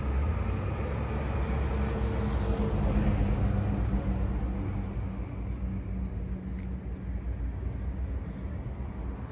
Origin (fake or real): real